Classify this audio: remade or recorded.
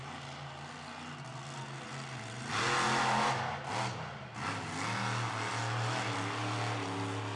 recorded